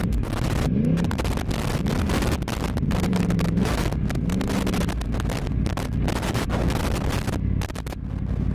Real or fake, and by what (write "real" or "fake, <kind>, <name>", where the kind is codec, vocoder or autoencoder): real